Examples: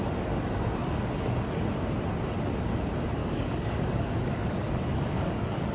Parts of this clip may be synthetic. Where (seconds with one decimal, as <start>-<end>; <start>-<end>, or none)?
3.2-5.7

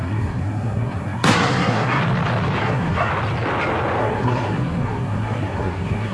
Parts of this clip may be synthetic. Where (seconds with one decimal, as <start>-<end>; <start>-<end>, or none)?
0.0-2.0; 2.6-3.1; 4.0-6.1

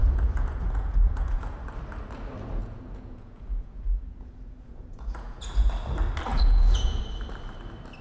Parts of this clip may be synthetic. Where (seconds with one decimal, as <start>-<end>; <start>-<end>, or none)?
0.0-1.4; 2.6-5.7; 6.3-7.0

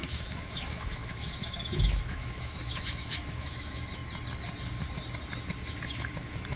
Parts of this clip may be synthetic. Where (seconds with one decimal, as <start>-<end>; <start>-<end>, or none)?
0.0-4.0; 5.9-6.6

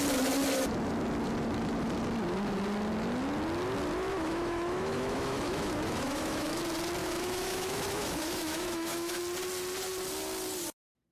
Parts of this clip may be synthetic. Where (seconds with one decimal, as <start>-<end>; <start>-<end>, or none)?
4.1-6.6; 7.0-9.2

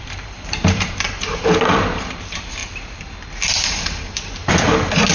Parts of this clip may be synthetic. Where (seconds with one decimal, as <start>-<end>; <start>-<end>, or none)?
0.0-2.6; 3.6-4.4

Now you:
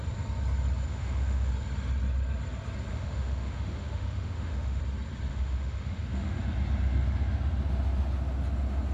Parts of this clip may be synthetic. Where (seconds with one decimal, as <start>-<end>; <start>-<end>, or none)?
0.9-1.5; 2.9-4.8; 5.3-6.4

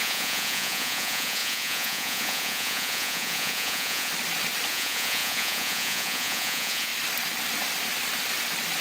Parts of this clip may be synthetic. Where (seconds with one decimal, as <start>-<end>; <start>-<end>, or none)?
0.0-4.1; 4.7-6.9